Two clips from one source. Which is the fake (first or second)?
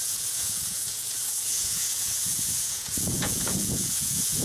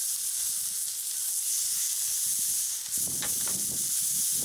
first